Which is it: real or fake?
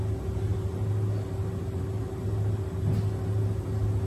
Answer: real